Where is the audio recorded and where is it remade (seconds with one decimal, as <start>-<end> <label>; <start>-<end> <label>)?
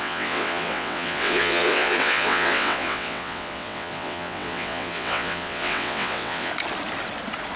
0.0-6.5 remade; 6.5-7.6 recorded